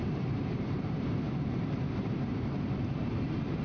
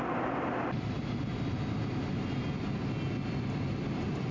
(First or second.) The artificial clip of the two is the first